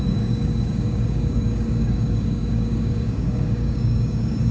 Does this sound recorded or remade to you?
remade